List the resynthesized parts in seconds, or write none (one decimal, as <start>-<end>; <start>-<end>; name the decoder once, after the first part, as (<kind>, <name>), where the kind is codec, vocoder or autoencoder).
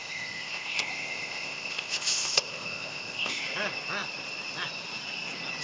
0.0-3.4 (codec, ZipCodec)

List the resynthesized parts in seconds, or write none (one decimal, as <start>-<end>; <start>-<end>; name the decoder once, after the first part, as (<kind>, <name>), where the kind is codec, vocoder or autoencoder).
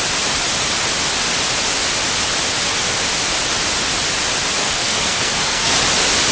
4.6-5.7 (codec, SNAC)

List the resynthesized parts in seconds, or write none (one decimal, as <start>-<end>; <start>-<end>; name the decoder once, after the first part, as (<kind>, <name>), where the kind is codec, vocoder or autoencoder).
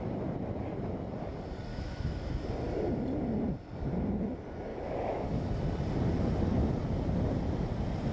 1.7-2.2 (autoencoder, DAC-VAE); 4.7-5.5